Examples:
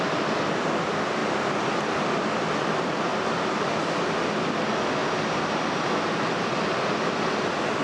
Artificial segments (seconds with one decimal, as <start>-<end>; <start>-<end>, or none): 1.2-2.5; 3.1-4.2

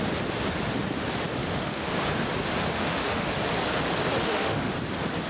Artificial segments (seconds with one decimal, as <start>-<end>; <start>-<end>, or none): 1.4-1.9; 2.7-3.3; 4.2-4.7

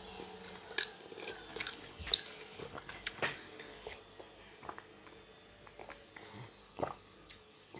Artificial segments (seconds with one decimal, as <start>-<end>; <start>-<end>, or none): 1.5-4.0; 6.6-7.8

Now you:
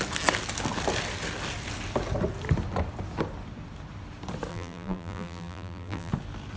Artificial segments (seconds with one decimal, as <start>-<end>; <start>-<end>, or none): 4.5-6.1

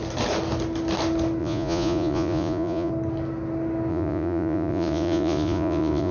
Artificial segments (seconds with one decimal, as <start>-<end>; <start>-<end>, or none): 1.4-2.9; 3.9-6.1

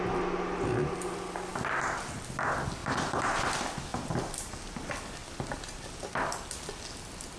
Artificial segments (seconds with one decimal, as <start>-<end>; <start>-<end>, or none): 1.5-2.2; 2.8-3.4; 3.9-4.5

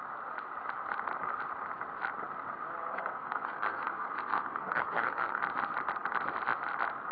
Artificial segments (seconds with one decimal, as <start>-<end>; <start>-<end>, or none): 2.9-5.4

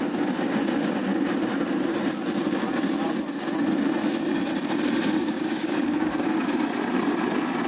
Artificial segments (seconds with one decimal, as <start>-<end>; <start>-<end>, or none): 5.2-6.5